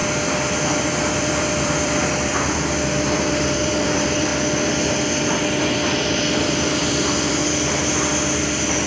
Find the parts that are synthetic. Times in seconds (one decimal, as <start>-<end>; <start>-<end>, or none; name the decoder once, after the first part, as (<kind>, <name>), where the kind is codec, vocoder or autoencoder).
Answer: 0.7-4.3 (vocoder, BigVGAN v2); 5.6-7.4